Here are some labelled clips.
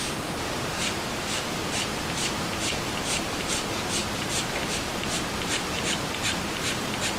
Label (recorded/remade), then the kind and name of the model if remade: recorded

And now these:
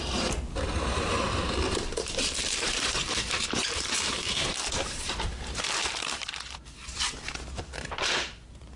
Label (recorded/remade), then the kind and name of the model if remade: remade, vocoder, BigVGAN v2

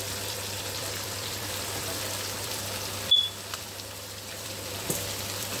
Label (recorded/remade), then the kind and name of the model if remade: remade, vocoder, BigVGAN v2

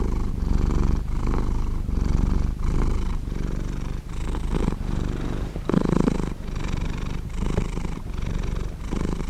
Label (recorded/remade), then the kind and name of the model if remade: remade, vocoder, BigVGAN v2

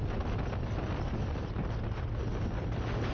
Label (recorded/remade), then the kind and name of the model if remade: recorded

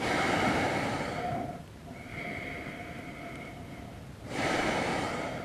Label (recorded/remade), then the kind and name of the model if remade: remade, vocoder, BigVGAN v2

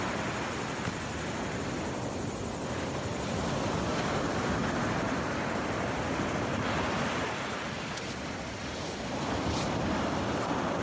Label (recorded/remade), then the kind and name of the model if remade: recorded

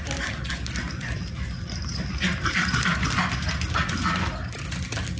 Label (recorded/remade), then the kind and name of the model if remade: recorded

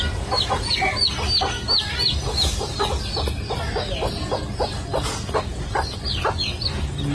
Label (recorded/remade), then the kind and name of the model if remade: recorded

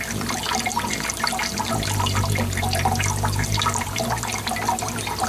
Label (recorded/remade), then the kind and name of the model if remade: recorded